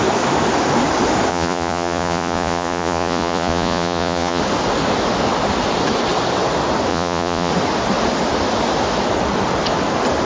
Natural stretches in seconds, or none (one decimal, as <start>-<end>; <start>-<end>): 0.0-1.3; 4.4-6.9; 7.5-10.3